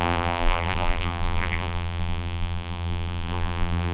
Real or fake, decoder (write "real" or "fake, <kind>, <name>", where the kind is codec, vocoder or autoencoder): fake, vocoder, BigVGAN v2